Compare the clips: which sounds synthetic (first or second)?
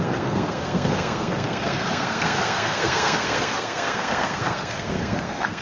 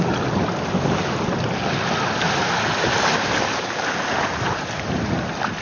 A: first